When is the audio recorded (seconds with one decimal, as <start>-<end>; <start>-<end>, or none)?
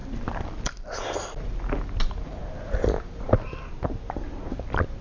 0.0-5.0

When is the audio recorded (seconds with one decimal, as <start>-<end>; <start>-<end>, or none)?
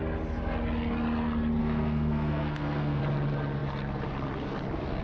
0.0-1.6; 3.0-5.0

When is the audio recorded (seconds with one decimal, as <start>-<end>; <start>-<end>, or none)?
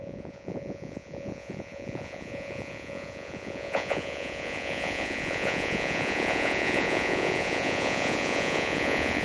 none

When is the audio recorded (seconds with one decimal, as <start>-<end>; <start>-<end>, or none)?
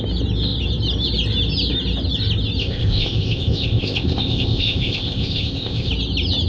0.0-2.6; 5.9-6.5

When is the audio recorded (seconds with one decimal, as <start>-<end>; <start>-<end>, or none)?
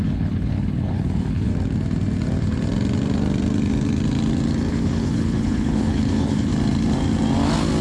1.5-4.7; 6.5-7.8